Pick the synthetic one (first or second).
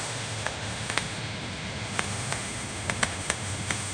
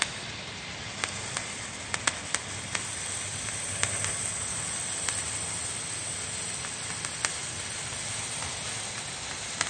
first